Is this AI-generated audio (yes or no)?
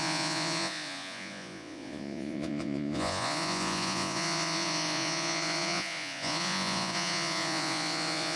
yes